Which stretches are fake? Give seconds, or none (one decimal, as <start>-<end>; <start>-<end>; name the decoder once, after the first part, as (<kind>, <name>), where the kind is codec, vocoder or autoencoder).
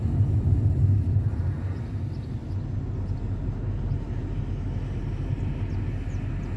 none